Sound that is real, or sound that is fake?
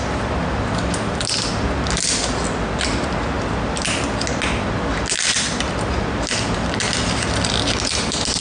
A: real